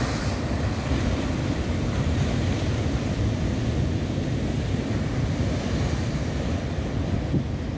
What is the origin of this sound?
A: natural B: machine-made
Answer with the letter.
A